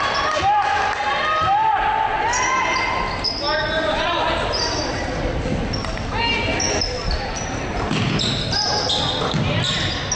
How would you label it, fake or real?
real